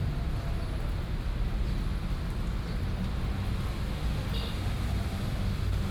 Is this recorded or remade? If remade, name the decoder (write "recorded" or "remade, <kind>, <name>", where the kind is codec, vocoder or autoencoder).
recorded